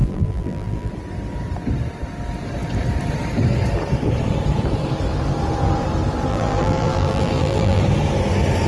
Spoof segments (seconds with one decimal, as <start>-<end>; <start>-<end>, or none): 0.0-0.9; 6.3-7.8